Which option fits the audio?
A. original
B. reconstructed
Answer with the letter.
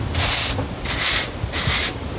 A